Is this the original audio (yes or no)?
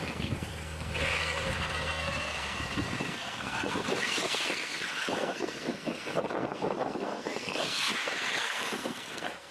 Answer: no